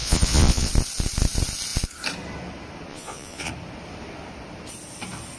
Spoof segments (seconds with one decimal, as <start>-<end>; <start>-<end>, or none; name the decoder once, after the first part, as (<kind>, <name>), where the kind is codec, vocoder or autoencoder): 0.0-0.7 (vocoder, Vocos); 2.9-3.5